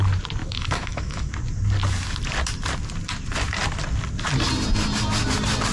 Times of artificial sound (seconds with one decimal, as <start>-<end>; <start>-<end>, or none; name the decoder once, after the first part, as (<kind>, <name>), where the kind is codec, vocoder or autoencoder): 0.4-1.3 (autoencoder, DAC-VAE)